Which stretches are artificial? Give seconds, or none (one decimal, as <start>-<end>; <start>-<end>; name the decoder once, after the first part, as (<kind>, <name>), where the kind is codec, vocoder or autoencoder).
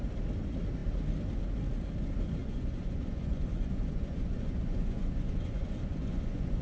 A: 2.4-6.6 (vocoder, Vocos)